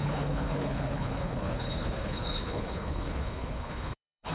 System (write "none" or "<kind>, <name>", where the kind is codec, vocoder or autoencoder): codec, HILCodec